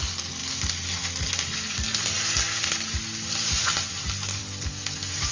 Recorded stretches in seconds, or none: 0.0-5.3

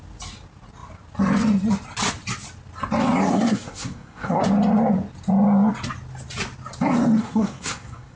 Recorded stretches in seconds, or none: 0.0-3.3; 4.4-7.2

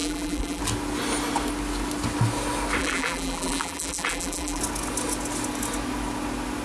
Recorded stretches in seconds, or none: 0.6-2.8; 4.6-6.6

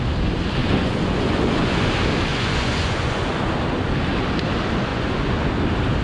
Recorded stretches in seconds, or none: 0.0-0.6; 1.9-2.3; 3.5-4.9; 5.5-6.0